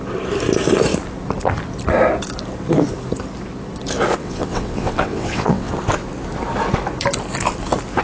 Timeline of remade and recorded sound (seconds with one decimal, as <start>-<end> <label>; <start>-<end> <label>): 0.0-4.2 recorded; 4.2-5.7 remade; 5.7-8.0 recorded